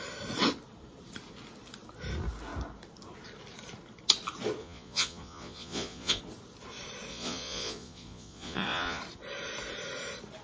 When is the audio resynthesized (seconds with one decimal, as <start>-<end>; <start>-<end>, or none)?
4.6-6.2; 7.1-9.0